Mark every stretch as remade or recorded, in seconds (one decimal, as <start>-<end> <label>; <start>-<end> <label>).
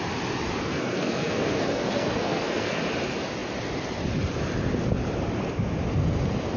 0.0-0.7 recorded; 0.7-2.8 remade; 2.8-6.6 recorded